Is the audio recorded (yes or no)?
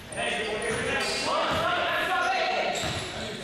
no